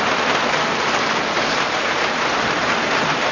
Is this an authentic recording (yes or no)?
yes